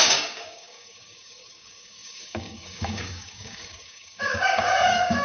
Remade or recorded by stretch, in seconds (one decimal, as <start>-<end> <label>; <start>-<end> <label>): 0.0-5.2 remade